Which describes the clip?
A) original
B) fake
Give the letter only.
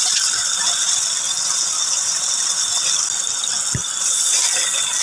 A